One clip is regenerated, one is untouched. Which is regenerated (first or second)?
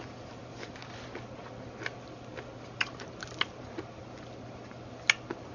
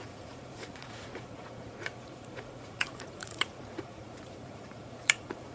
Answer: second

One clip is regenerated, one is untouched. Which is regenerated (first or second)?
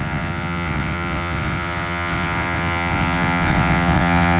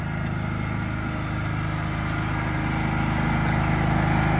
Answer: first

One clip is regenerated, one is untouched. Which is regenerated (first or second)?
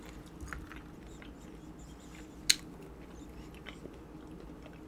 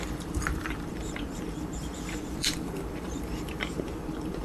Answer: second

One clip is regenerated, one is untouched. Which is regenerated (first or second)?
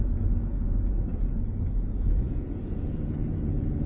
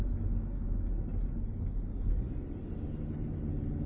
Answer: first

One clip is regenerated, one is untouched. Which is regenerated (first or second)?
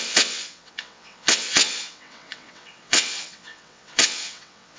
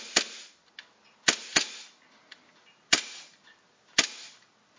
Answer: first